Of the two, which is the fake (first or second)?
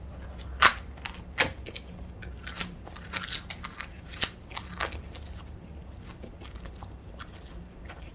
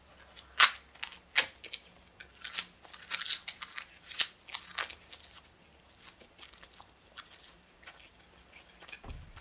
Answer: first